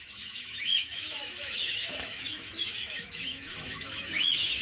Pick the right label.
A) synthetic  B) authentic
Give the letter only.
A